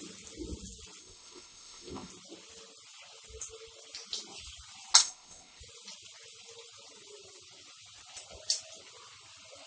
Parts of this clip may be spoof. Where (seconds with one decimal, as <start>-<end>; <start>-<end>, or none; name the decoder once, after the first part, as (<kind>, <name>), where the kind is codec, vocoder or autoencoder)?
1.0-2.1 (codec, ZipCodec); 5.0-5.6